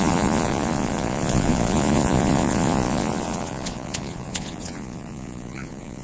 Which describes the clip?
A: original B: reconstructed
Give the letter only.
B